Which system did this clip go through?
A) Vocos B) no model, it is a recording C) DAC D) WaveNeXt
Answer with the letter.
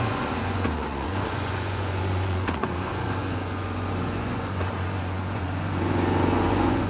A